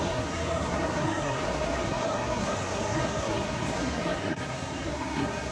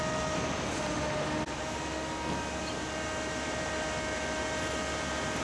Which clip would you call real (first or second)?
second